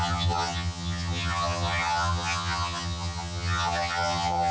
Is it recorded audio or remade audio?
remade